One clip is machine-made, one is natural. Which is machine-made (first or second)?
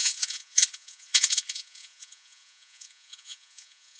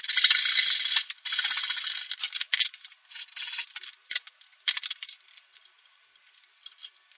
first